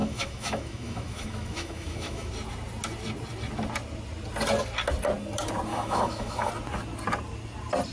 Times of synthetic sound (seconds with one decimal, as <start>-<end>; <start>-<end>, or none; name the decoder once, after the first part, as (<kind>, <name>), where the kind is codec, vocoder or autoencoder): 0.0-2.3 (autoencoder, DAC-VAE); 5.7-6.5